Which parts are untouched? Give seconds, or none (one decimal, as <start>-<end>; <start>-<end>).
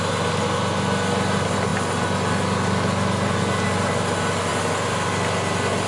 0.0-5.9